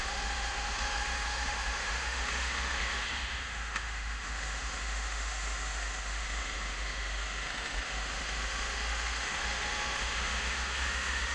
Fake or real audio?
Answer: fake